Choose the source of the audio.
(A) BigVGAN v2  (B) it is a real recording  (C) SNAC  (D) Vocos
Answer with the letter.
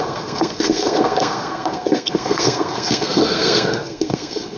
C